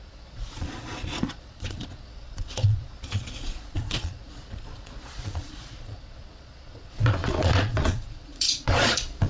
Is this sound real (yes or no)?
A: no